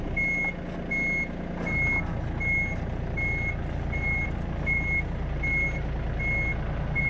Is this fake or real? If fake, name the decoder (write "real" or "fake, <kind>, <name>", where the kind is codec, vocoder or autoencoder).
real